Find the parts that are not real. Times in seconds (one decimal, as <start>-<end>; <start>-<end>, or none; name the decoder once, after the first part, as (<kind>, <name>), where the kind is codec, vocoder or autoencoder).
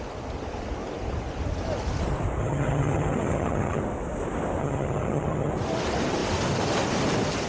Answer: 2.4-3.8 (vocoder, HiFi-GAN); 4.6-5.5